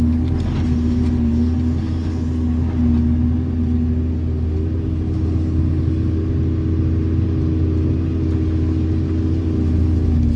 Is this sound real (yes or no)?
yes